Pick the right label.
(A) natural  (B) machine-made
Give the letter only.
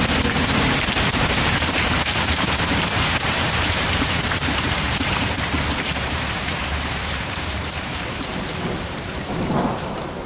B